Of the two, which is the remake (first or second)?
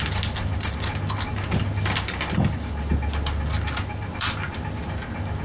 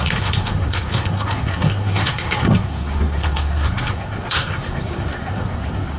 second